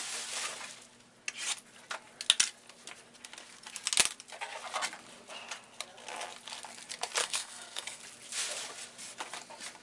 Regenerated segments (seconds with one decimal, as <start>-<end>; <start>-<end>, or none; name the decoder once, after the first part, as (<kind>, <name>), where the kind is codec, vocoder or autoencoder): 7.2-8.0 (codec, SNAC)